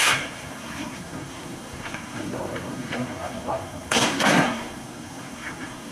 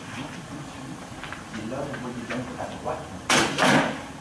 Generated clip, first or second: first